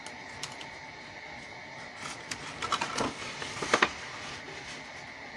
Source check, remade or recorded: recorded